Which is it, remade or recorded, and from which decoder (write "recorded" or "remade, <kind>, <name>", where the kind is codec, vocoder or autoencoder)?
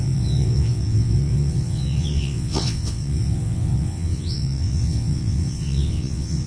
remade, vocoder, WaveNeXt